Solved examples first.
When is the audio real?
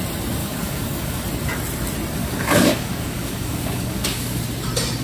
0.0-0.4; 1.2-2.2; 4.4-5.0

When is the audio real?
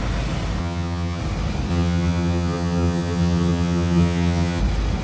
0.0-0.6; 1.2-1.7; 4.6-5.0